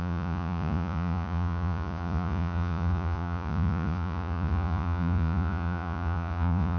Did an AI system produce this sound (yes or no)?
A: yes